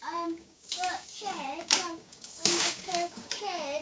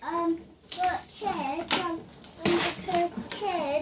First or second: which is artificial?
first